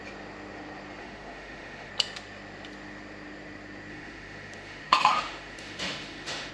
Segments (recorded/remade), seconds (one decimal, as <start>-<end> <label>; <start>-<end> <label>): 0.0-1.0 recorded; 1.0-1.9 remade; 1.9-3.9 recorded; 3.9-6.5 remade